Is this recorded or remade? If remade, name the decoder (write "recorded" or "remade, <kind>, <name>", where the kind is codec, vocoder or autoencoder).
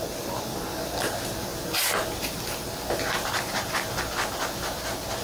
recorded